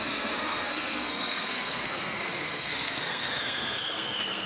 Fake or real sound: fake